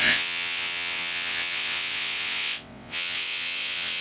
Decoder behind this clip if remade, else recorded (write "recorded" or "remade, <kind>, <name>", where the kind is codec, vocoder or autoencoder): remade, vocoder, WaveNeXt